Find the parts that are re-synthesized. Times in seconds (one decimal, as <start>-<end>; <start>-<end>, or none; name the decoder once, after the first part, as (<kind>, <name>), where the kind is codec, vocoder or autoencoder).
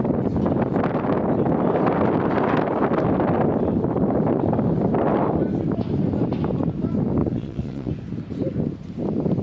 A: 7.2-7.9 (vocoder, Vocos)